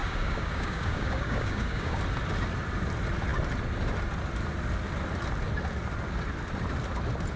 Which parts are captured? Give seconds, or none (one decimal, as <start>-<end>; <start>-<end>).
2.0-7.4